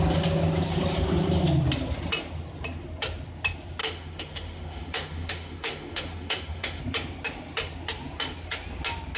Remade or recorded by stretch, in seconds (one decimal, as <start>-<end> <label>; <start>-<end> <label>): 0.0-3.8 recorded; 3.8-6.8 remade; 6.8-9.2 recorded